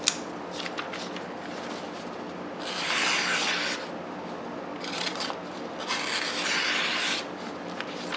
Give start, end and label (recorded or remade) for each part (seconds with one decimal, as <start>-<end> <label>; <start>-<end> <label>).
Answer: 0.0-4.7 recorded; 4.7-5.3 remade; 5.3-8.2 recorded